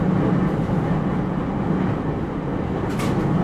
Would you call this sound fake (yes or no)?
no